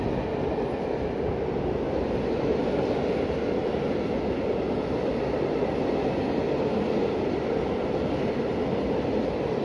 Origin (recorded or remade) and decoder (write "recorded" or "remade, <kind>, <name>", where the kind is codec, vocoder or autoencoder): recorded